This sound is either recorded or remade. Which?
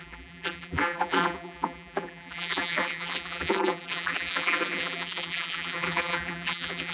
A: remade